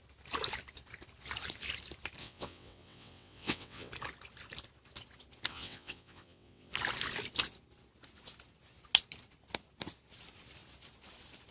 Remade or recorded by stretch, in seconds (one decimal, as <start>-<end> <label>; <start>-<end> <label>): 0.0-2.2 recorded; 2.2-3.9 remade; 3.9-5.5 recorded; 5.5-6.7 remade; 6.7-11.5 recorded